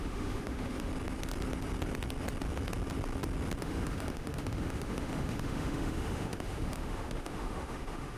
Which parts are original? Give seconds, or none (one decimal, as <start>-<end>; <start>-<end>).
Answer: 0.9-3.6